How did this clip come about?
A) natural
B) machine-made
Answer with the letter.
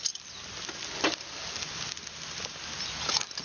A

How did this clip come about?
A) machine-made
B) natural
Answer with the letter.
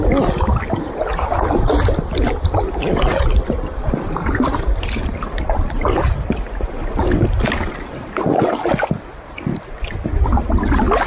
A